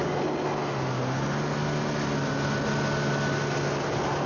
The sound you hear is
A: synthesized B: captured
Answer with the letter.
B